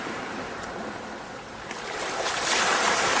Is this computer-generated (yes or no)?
no